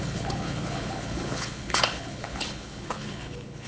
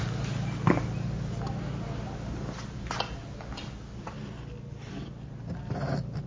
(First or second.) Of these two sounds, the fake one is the first